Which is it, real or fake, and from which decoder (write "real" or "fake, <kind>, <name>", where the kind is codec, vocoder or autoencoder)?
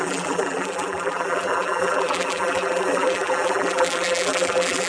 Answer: fake, vocoder, BigVGAN v2